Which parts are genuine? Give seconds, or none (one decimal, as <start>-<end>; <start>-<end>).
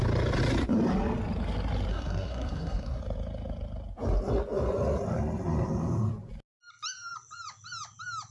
0.0-1.9; 3.0-8.3